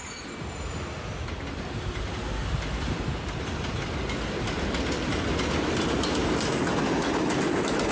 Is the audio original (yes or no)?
yes